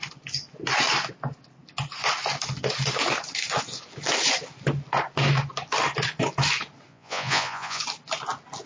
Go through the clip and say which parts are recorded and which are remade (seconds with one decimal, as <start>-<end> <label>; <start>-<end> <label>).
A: 0.0-6.9 recorded; 6.9-7.8 remade; 7.8-8.7 recorded

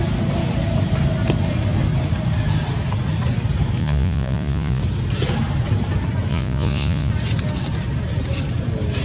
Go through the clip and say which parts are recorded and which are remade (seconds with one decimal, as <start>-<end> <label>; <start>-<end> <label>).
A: 0.0-3.8 recorded; 3.8-4.8 remade; 4.8-6.3 recorded; 6.3-7.1 remade; 7.1-9.0 recorded

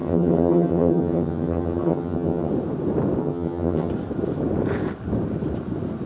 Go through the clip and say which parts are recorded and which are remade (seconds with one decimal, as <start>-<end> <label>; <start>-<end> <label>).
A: 0.0-2.5 remade; 2.5-3.2 recorded; 3.2-3.9 remade; 3.9-6.1 recorded

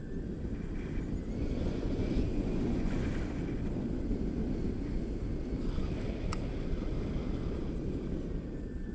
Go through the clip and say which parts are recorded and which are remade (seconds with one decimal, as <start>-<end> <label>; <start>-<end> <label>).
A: 0.0-1.4 recorded; 1.4-3.1 remade; 3.1-8.9 recorded

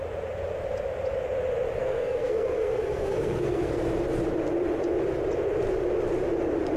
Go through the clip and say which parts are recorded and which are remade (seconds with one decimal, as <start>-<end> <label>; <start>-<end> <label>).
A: 0.0-1.8 recorded; 1.8-3.8 remade; 3.8-6.8 recorded

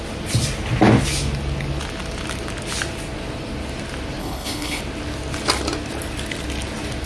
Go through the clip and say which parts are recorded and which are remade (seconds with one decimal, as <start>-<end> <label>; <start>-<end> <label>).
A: 0.0-4.2 recorded; 4.2-4.8 remade; 4.8-7.1 recorded